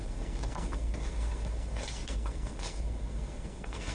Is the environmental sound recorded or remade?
remade